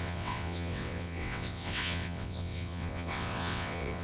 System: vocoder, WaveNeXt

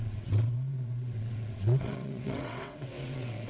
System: vocoder, WaveNeXt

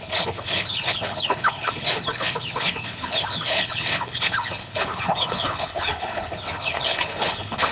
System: codec, HILCodec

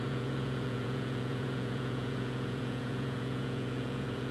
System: vocoder, Vocos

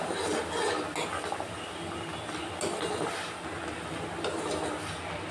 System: none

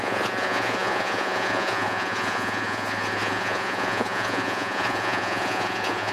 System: vocoder, Vocos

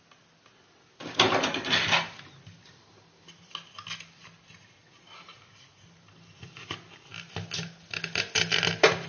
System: none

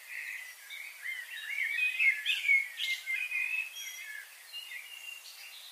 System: none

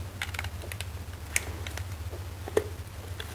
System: none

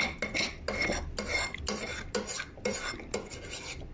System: none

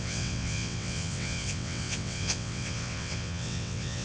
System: vocoder, WaveNeXt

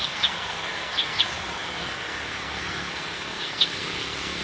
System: codec, SNAC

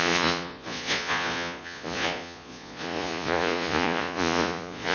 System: vocoder, Vocos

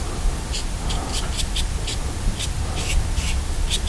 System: none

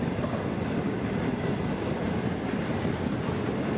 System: none